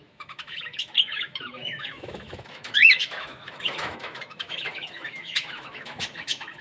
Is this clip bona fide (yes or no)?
no